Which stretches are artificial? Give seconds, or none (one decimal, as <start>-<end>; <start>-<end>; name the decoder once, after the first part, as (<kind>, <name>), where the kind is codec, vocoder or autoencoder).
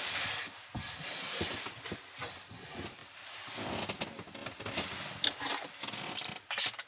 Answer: none